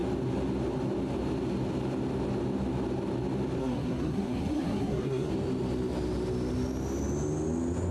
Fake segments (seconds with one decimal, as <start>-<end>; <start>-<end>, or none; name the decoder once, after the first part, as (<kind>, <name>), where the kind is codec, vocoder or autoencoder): 3.6-5.3 (codec, SNAC)